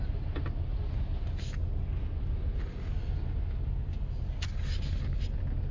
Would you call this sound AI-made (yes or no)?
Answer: no